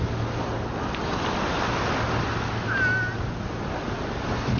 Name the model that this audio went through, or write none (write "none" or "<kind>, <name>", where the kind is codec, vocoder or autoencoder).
none